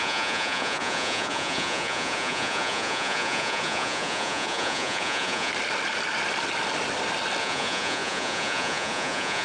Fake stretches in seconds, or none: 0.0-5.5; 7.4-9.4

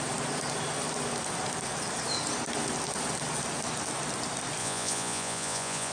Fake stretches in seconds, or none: 4.6-5.9

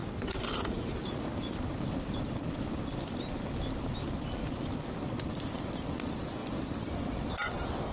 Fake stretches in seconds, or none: none